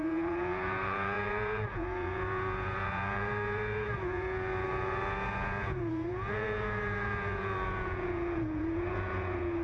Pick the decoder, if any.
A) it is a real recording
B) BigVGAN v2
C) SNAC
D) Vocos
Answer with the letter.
D